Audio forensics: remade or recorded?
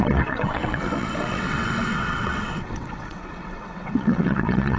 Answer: remade